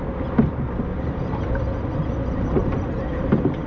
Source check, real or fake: real